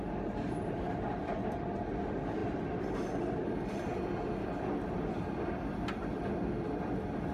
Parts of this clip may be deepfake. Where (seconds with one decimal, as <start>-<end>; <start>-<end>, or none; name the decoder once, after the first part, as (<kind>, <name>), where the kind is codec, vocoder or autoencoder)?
none